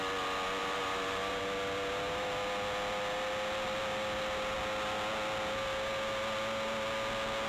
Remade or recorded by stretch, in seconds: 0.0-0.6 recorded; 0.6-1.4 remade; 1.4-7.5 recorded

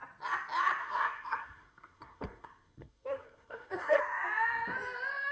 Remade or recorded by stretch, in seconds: 0.0-0.8 recorded; 0.8-4.0 remade; 4.0-5.3 recorded

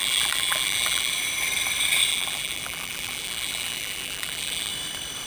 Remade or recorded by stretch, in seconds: 0.0-1.1 remade; 1.1-2.1 recorded; 2.1-4.7 remade; 4.7-5.3 recorded

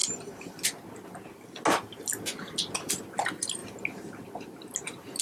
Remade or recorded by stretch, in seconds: 0.0-3.1 recorded; 3.1-3.6 remade; 3.6-5.2 recorded

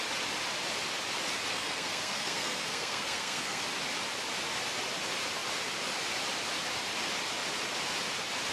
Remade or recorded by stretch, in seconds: 0.0-1.5 recorded; 1.5-3.6 remade; 3.6-8.5 recorded

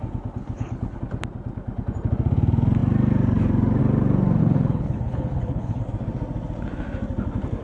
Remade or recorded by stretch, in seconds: 0.0-0.4 recorded; 0.4-1.0 remade; 1.0-4.4 recorded; 4.4-5.8 remade; 5.8-7.6 recorded